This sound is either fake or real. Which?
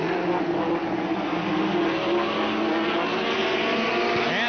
real